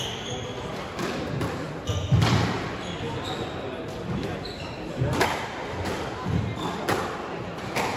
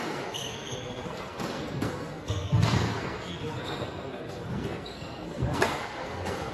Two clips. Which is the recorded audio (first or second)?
first